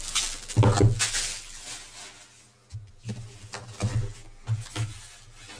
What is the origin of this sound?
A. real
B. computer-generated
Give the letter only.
A